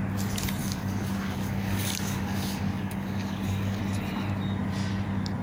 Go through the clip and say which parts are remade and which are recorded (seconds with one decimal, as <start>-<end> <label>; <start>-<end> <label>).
0.0-0.6 recorded; 0.6-3.8 remade; 3.8-5.4 recorded